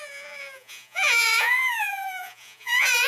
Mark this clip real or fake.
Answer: fake